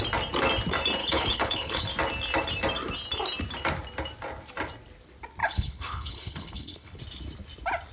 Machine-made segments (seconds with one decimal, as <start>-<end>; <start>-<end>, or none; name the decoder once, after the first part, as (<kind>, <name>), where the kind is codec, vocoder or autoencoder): 1.0-1.8 (codec, HILCodec); 5.4-7.0